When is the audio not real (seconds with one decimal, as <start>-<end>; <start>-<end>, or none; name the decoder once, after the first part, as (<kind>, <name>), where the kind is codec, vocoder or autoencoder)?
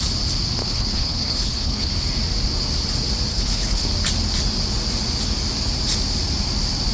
0.6-1.9 (codec, HILCodec); 3.3-3.9